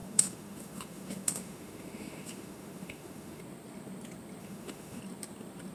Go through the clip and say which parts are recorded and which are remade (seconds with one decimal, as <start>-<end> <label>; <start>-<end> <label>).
0.0-3.4 remade; 3.4-4.4 recorded; 4.4-5.0 remade; 5.0-5.7 recorded